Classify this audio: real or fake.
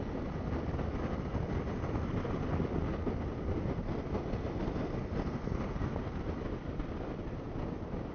real